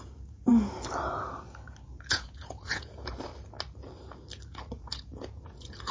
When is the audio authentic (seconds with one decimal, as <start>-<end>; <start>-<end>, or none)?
0.5-2.1; 3.3-4.8